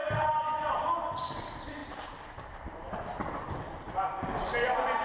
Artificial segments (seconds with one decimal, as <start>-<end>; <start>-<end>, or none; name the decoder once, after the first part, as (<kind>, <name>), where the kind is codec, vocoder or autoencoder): 1.8-3.6 (vocoder, BigVGAN v2)